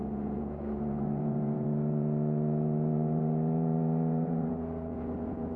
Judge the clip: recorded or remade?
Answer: remade